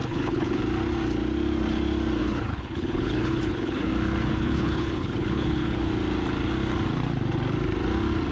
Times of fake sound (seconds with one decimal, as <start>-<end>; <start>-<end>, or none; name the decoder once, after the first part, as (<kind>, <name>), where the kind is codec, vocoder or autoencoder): 0.0-0.6 (codec, HILCodec); 2.2-3.9; 4.3-5.9